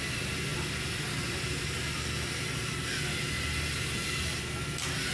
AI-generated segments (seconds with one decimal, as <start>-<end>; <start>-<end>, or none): none